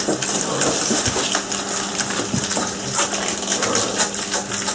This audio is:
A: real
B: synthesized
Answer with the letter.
A